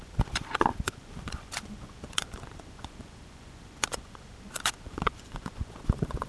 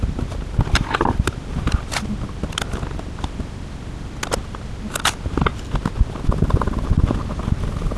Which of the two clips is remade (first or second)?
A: first